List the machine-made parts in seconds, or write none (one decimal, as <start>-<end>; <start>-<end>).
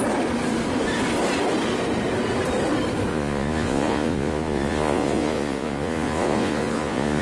3.1-7.2